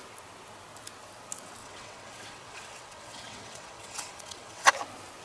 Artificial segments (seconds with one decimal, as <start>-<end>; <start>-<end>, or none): 1.6-4.7